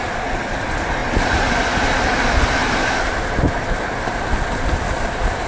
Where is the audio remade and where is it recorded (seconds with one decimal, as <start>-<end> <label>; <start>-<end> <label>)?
0.0-5.5 recorded